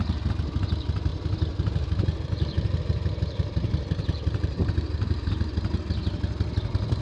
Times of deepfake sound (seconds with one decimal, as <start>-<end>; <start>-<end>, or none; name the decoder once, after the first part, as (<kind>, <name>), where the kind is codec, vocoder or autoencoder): 1.1-5.3 (vocoder, BigVGAN v2)